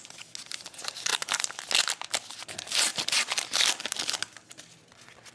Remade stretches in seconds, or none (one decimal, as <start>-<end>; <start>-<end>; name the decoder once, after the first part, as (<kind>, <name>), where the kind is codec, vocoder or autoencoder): none